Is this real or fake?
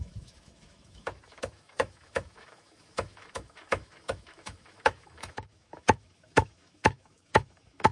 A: fake